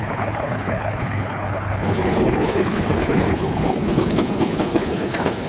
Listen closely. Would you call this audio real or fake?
fake